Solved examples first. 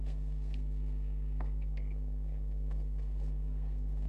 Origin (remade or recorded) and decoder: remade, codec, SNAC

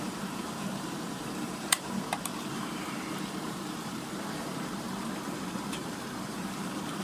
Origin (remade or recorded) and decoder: remade, vocoder, BigVGAN v2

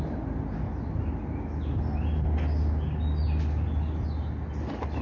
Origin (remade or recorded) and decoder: recorded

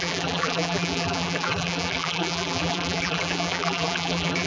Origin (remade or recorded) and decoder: remade, vocoder, BigVGAN v2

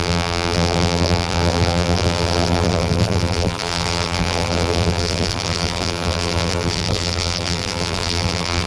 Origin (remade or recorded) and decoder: remade, vocoder, BigVGAN v2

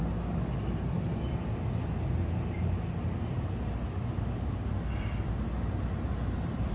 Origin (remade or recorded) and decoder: recorded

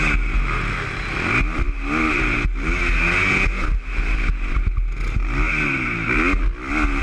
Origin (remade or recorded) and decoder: recorded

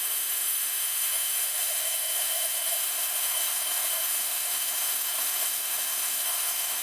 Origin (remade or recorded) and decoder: remade, autoencoder, DAC-VAE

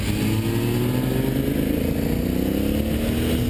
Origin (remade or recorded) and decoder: recorded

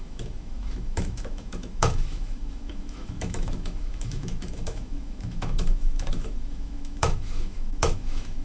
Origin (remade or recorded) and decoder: remade, autoencoder, DAC-VAE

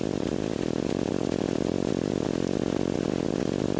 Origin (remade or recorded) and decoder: recorded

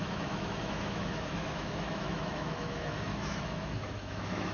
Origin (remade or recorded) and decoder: remade, autoencoder, DAC-VAE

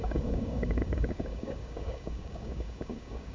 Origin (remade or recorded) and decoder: remade, codec, DAC